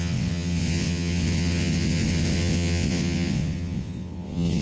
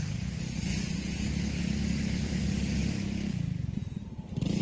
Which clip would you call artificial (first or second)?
first